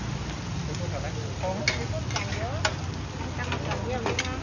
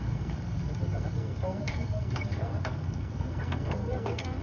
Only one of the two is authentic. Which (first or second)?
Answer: first